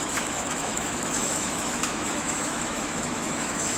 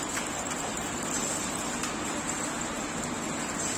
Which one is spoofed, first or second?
first